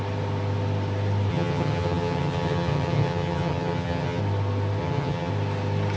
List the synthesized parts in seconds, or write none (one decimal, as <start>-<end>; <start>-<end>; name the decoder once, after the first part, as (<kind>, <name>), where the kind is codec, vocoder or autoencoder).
1.3-4.2 (vocoder, HiFi-GAN); 4.8-5.3